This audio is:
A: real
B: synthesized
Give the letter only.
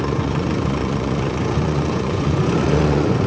B